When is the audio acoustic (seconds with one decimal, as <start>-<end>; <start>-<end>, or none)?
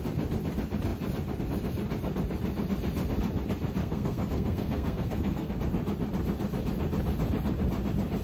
0.0-3.8; 5.5-8.2